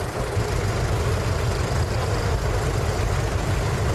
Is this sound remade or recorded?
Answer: recorded